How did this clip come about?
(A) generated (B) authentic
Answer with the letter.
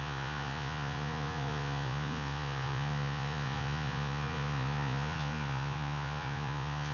A